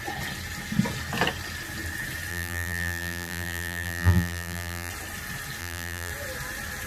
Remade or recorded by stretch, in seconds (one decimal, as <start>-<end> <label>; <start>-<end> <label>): 0.0-2.3 recorded; 2.3-4.9 remade; 4.9-5.6 recorded; 5.6-6.1 remade; 6.1-6.9 recorded